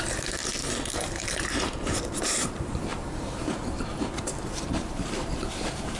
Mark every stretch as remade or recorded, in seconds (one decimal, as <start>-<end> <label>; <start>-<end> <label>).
0.0-0.4 remade; 0.4-0.9 recorded; 0.9-6.0 remade